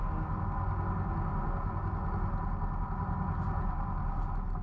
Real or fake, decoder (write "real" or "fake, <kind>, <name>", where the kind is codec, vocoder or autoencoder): real